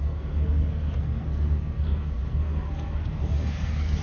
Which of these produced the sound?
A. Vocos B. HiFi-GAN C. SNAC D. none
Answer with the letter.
C